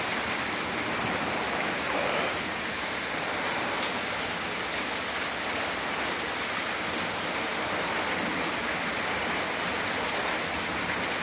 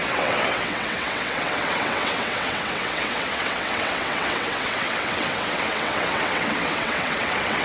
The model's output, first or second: second